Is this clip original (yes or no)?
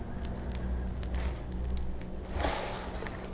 yes